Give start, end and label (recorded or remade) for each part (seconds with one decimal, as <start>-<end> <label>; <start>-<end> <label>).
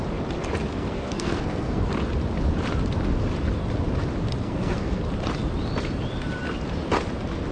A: 0.0-0.7 recorded; 0.7-1.8 remade; 1.8-4.4 recorded; 4.4-5.0 remade; 5.0-7.5 recorded